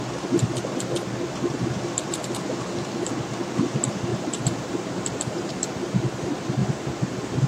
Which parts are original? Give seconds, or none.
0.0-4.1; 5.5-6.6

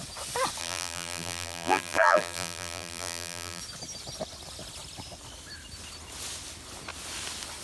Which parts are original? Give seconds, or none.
0.0-0.6; 3.6-7.6

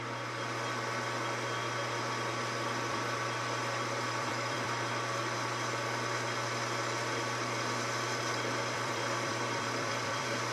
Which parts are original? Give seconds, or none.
5.2-8.2

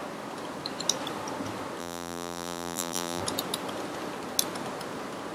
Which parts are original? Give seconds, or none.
0.0-1.8; 3.2-5.3

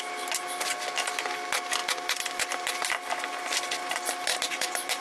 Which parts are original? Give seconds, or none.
0.0-4.3

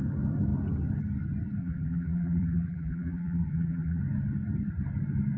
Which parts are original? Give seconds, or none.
0.0-1.6; 4.0-5.4

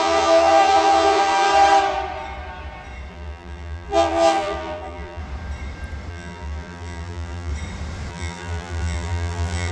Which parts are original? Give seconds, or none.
1.5-3.1; 5.2-6.1; 7.5-8.1

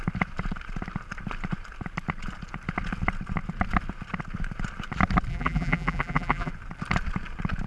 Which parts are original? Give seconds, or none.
0.0-5.3; 6.5-7.7